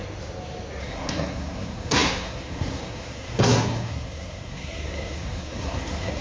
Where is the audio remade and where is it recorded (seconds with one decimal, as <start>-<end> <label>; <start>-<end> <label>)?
0.0-0.8 recorded; 0.8-6.2 remade